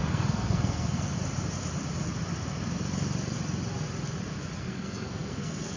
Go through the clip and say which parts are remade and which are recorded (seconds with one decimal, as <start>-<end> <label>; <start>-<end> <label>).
0.0-1.1 remade; 1.1-4.6 recorded; 4.6-5.8 remade

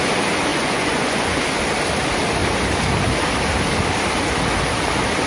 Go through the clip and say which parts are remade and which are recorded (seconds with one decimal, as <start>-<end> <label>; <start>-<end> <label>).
0.0-0.5 recorded; 0.5-1.4 remade; 1.4-5.3 recorded

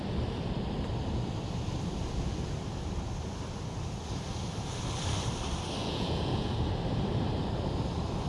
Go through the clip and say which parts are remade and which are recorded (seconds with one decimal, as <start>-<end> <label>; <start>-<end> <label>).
0.0-5.8 recorded; 5.8-6.5 remade; 6.5-8.3 recorded

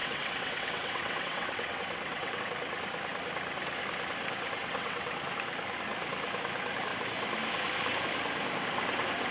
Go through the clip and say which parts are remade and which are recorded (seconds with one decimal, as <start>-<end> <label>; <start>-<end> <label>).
0.0-2.4 remade; 2.4-4.6 recorded; 4.6-5.1 remade; 5.1-9.3 recorded

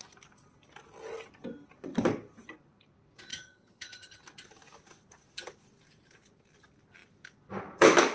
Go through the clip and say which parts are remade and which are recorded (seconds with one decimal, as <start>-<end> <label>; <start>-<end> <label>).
0.0-3.3 recorded; 3.3-4.2 remade; 4.2-8.1 recorded

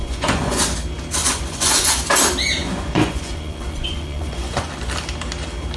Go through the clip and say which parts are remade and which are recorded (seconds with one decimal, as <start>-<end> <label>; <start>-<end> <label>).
0.0-0.6 remade; 0.6-1.2 recorded; 1.2-2.0 remade; 2.0-2.6 recorded; 2.6-4.9 remade; 4.9-5.8 recorded

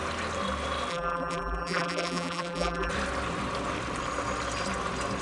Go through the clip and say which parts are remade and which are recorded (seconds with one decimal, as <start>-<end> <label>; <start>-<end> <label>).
0.0-0.9 recorded; 0.9-2.9 remade; 2.9-5.2 recorded